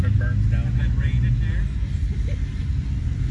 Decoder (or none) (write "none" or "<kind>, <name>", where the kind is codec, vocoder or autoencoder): none